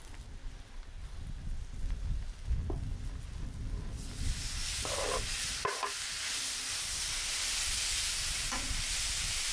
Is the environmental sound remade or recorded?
recorded